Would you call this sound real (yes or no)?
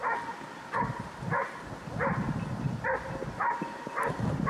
yes